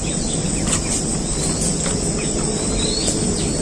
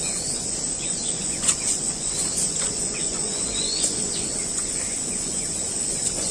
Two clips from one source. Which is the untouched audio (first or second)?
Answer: first